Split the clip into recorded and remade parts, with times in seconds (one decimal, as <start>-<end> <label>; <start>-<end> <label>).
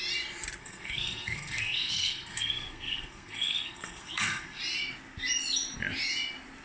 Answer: 0.0-0.6 recorded; 0.6-4.6 remade; 4.6-6.6 recorded